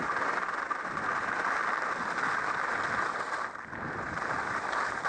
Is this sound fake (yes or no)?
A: no